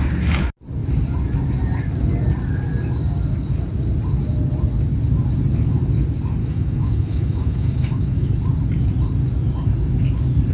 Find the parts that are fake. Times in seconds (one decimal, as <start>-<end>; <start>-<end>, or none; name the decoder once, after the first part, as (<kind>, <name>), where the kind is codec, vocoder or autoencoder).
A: 6.4-8.3 (autoencoder, DAC-VAE)